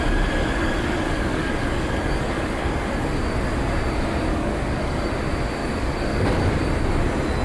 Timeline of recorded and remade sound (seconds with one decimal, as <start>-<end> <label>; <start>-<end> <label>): 0.0-0.4 recorded; 0.4-3.2 remade; 3.2-4.3 recorded; 4.3-5.1 remade; 5.1-5.6 recorded; 5.6-6.7 remade; 6.7-7.4 recorded

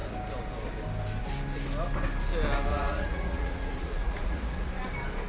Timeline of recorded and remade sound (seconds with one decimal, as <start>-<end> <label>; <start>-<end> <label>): 0.0-2.7 recorded; 2.7-4.7 remade; 4.7-5.3 recorded

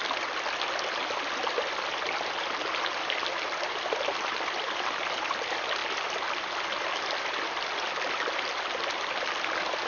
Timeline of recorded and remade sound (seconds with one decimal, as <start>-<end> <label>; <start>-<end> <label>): 0.0-9.9 recorded

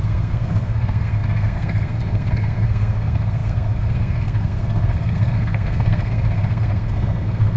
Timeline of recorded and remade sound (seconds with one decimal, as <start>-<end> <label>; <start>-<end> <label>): 0.0-7.6 remade

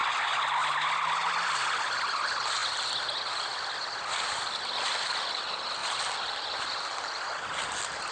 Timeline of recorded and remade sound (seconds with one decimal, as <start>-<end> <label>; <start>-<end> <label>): 0.0-8.1 recorded